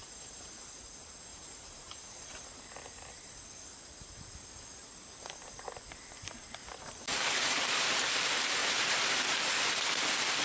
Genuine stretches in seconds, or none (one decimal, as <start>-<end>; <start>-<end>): 0.8-1.3; 2.6-6.6; 7.3-10.4